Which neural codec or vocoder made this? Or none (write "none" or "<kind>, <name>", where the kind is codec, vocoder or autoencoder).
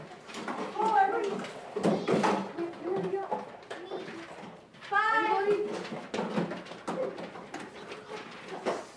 none